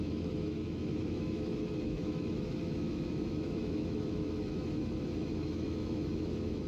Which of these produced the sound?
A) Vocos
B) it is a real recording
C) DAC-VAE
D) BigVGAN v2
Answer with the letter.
C